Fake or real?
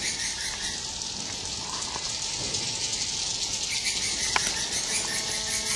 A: real